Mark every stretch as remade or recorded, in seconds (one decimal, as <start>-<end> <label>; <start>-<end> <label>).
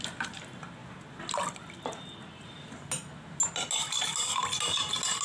0.0-5.2 recorded